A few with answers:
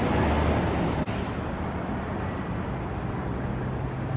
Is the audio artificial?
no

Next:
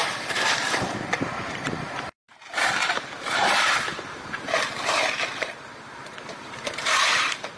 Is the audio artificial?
yes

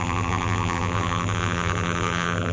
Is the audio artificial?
yes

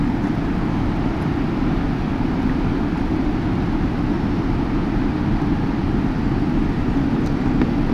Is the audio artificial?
no